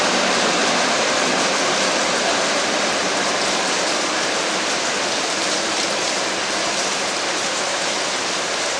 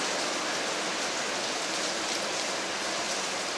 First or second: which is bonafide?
second